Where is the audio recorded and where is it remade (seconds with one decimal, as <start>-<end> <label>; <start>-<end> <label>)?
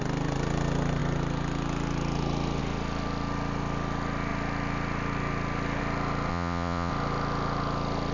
0.0-6.3 recorded; 6.3-6.9 remade; 6.9-8.1 recorded